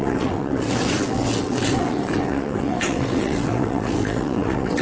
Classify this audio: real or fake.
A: fake